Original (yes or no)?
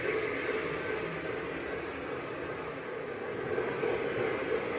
yes